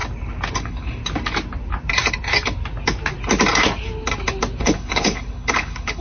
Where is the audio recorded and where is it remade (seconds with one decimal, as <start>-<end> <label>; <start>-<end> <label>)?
0.0-0.6 recorded; 0.6-1.0 remade; 1.0-4.6 recorded; 4.6-6.0 remade

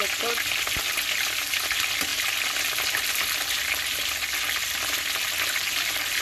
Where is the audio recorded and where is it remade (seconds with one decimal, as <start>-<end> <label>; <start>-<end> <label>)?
0.0-6.2 recorded